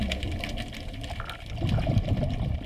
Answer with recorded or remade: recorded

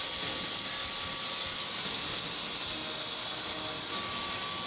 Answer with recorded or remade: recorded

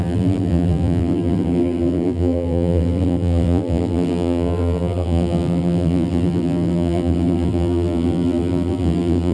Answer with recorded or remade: remade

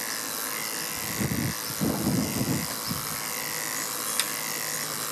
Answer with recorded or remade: recorded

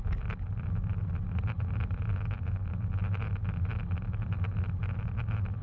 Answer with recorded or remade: recorded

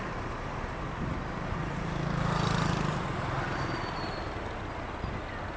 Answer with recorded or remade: recorded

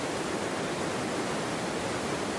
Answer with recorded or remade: recorded